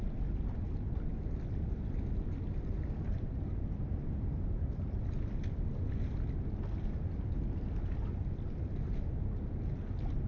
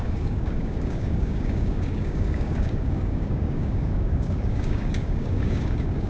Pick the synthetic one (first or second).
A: second